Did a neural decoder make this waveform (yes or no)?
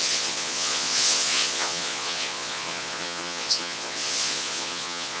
yes